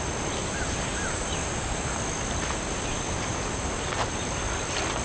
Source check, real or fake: real